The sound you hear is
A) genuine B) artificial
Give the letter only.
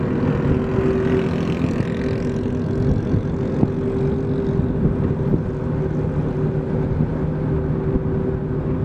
A